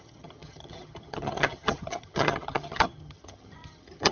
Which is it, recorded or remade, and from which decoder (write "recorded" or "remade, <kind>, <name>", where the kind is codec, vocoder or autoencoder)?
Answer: remade, vocoder, HiFi-GAN